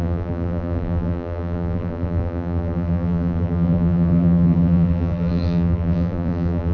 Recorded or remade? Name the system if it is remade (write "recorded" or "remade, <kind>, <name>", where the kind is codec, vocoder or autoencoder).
remade, vocoder, BigVGAN v2